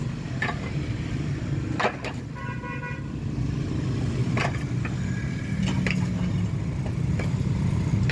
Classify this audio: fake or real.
real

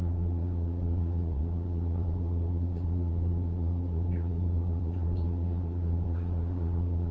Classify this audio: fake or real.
fake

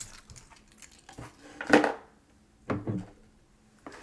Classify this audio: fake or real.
real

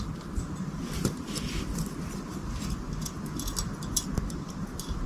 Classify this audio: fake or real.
real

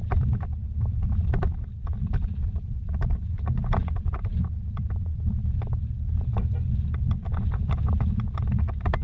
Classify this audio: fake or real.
real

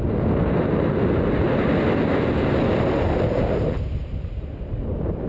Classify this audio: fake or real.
real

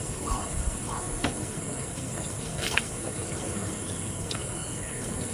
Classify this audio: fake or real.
fake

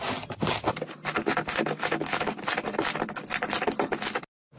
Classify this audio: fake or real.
real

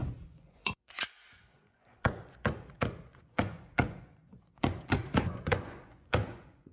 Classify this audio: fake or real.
fake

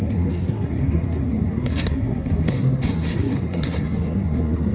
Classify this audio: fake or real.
fake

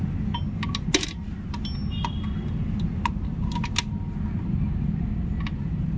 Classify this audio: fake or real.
real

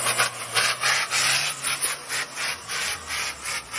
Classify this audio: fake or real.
real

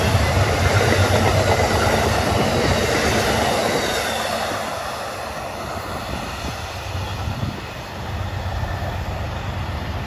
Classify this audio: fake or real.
real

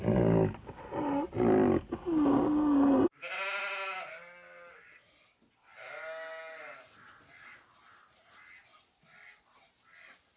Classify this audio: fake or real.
real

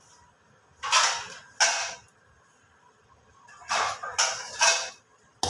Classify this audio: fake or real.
real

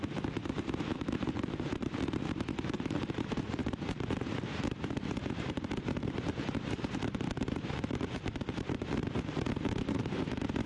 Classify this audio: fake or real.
fake